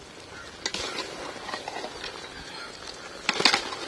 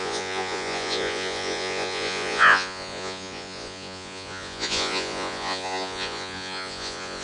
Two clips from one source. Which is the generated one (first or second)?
second